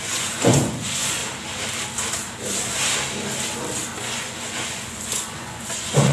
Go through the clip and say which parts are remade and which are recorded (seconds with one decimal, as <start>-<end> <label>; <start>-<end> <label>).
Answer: 0.0-1.2 remade; 1.2-4.0 recorded; 4.0-6.1 remade